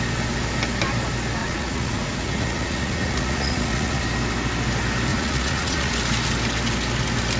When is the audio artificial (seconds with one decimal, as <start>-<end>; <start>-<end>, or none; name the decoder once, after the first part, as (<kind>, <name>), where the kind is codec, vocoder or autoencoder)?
1.4-4.0 (vocoder, Vocos); 5.1-5.9

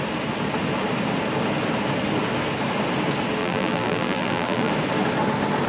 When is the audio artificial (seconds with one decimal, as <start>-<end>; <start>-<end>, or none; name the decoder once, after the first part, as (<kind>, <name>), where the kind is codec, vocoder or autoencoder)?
3.4-4.7 (vocoder, BigVGAN v2)

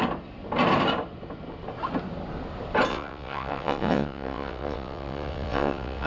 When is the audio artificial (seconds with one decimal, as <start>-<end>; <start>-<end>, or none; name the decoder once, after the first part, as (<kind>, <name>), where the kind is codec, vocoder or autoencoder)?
2.9-6.1 (vocoder, WaveNeXt)

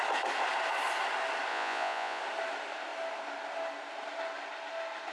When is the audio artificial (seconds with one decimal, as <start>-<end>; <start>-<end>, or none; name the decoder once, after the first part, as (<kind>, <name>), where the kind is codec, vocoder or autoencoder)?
1.5-2.2 (vocoder, Vocos)